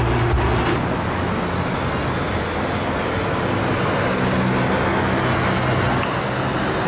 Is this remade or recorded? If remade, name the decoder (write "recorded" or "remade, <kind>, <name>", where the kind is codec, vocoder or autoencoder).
recorded